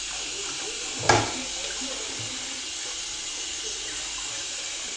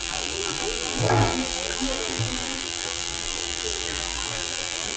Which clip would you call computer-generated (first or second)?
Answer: second